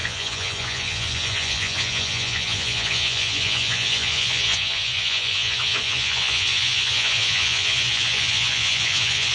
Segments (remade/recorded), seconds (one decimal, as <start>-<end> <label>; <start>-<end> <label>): 0.0-9.3 remade